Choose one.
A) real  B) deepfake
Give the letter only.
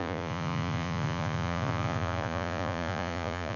B